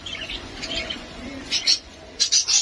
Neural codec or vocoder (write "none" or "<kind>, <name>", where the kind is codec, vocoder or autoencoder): vocoder, Vocos